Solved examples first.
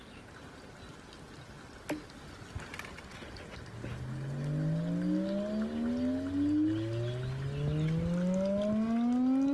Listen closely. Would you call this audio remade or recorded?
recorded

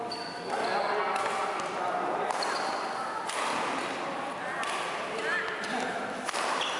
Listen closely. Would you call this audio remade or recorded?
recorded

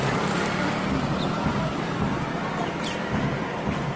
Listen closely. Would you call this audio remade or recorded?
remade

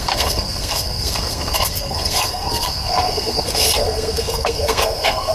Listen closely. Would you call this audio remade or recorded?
remade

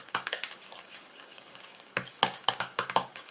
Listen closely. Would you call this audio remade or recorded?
remade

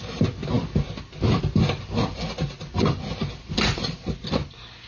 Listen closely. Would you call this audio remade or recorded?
recorded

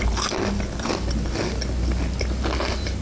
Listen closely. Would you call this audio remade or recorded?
recorded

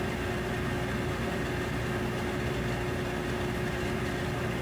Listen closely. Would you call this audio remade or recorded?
recorded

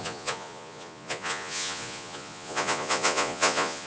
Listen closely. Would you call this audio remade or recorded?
remade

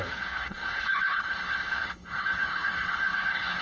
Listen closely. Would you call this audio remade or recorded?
remade